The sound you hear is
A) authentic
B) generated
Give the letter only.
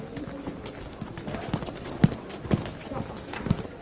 A